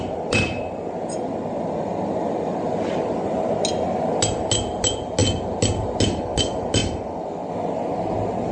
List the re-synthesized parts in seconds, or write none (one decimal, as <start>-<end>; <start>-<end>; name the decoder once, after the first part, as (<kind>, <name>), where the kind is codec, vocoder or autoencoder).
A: none